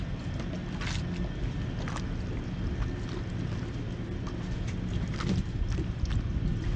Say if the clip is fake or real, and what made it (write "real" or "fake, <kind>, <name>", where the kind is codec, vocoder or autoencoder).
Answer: real